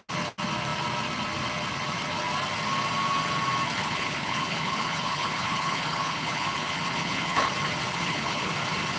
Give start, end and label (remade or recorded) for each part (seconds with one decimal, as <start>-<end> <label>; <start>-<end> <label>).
0.0-3.8 recorded; 3.8-7.5 remade; 7.5-7.9 recorded; 7.9-8.5 remade; 8.5-9.0 recorded

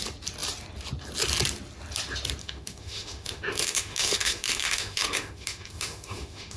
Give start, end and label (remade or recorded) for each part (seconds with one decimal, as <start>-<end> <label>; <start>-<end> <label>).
0.0-2.4 recorded; 2.4-6.6 remade

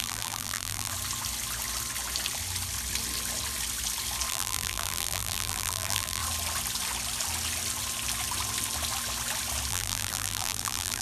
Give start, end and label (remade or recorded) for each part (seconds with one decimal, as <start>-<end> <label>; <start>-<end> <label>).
0.0-0.9 remade; 0.9-4.3 recorded; 4.3-6.2 remade; 6.2-9.7 recorded; 9.7-11.0 remade

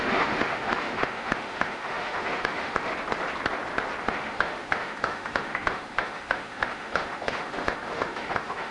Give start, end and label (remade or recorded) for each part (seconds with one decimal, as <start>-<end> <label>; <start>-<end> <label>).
0.0-2.9 remade; 2.9-4.0 recorded; 4.0-8.7 remade